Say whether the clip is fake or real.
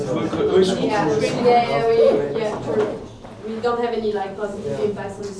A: real